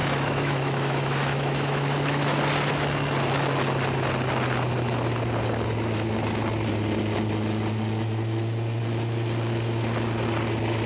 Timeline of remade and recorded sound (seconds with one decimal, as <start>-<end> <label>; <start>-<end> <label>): 0.0-2.4 remade; 2.4-10.9 recorded